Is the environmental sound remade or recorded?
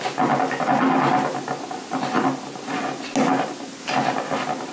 recorded